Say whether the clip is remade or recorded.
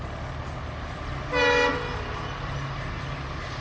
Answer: recorded